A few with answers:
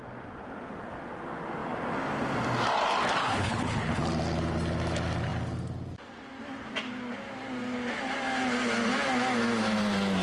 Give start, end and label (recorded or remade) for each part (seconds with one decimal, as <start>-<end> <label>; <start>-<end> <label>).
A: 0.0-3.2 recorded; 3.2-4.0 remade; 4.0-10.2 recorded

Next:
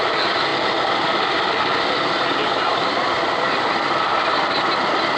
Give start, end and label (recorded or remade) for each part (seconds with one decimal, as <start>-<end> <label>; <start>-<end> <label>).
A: 0.0-5.2 recorded

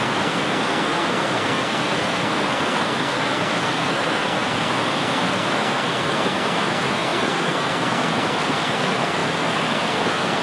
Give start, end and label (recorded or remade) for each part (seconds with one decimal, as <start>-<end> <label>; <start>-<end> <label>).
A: 0.0-10.4 remade